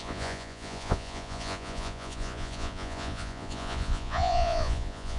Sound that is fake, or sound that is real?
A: fake